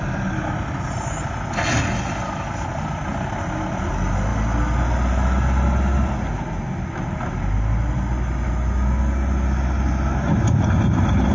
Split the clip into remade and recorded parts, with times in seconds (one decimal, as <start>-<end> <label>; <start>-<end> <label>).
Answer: 0.0-11.3 recorded